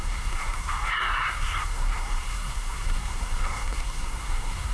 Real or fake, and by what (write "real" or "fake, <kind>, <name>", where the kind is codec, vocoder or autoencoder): fake, codec, SNAC